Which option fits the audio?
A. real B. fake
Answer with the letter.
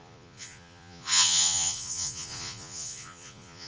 B